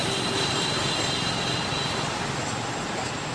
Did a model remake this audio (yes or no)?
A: no